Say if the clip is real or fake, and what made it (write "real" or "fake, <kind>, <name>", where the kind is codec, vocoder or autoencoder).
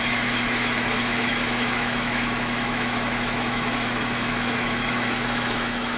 fake, autoencoder, DAC-VAE